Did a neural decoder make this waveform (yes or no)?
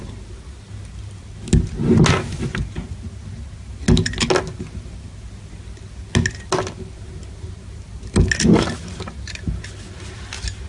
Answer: no